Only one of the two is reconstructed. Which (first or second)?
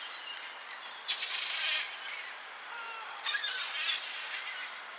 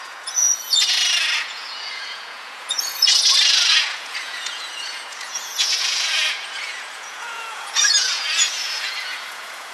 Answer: second